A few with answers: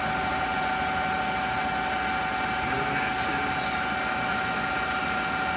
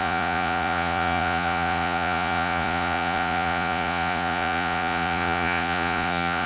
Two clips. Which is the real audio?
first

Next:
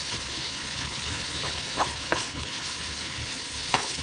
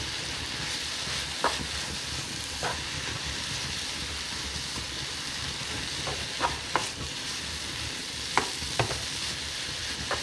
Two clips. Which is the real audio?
second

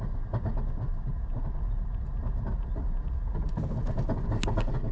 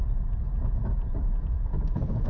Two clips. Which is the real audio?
first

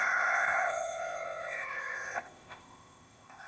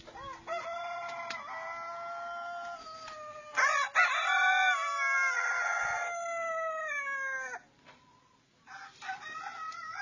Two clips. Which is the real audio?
second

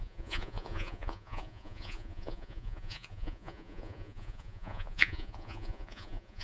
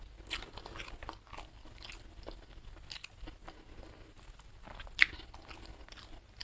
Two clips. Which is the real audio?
second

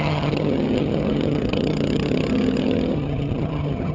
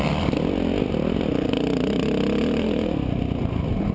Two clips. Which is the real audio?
second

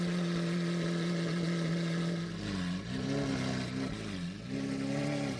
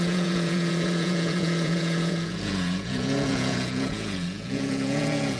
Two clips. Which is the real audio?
first